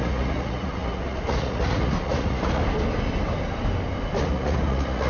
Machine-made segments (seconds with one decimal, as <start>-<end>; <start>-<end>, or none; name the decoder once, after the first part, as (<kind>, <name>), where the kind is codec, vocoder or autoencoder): 0.0-2.6 (vocoder, Vocos); 4.2-5.1